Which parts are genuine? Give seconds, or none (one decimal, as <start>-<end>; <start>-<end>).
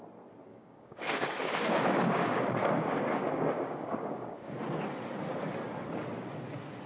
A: 0.0-0.5; 4.6-6.9